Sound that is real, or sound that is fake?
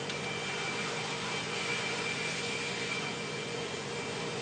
fake